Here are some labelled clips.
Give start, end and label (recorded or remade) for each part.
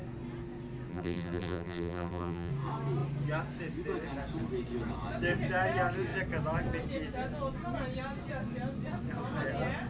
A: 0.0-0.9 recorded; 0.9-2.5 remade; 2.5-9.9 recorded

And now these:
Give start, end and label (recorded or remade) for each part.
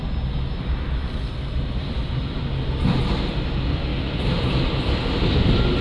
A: 0.0-3.9 recorded; 3.9-4.9 remade; 4.9-5.8 recorded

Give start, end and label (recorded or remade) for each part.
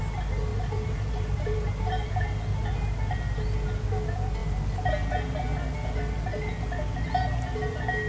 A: 0.0-0.5 recorded; 0.5-2.1 remade; 2.1-4.4 recorded; 4.4-4.9 remade; 4.9-8.1 recorded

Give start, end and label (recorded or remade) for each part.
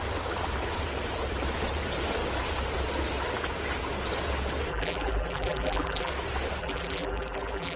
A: 0.0-4.7 recorded; 4.7-6.1 remade; 6.1-6.6 recorded; 6.6-7.8 remade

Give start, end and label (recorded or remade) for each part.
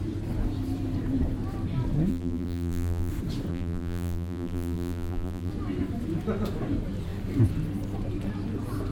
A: 0.0-2.1 recorded; 2.1-3.1 remade; 3.1-3.5 recorded; 3.5-5.5 remade; 5.5-8.9 recorded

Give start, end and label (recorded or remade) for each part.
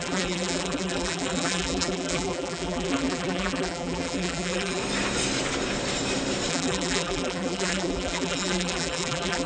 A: 0.0-4.8 remade; 4.8-6.5 recorded; 6.5-9.5 remade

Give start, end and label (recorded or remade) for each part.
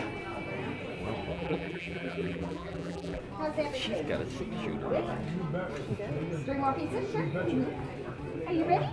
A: 0.0-1.3 recorded; 1.3-3.2 remade; 3.2-8.9 recorded